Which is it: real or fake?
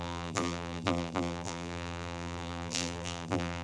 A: fake